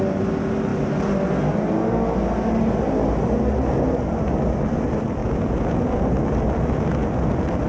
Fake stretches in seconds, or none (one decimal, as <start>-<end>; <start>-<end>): 5.2-6.0